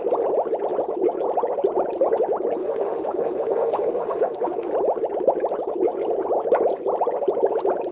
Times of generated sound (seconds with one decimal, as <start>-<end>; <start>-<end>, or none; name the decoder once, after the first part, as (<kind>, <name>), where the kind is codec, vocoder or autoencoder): 2.6-4.7 (autoencoder, DAC-VAE)